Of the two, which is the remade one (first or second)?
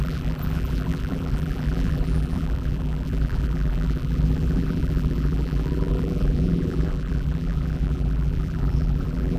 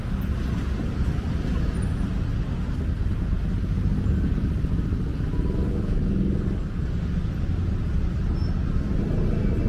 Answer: first